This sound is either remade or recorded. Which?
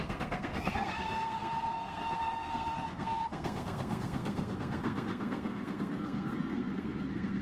remade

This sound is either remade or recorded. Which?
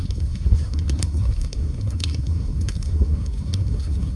remade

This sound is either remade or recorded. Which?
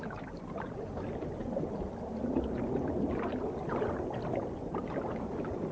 recorded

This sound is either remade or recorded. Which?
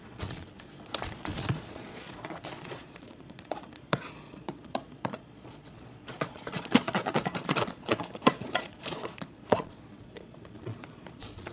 remade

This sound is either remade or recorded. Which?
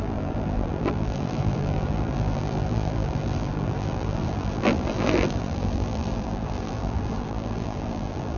remade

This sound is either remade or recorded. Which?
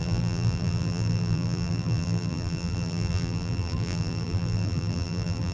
remade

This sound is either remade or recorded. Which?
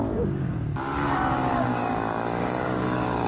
remade